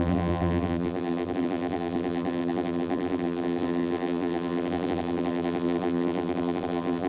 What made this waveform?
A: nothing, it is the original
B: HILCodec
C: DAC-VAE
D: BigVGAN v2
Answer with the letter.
D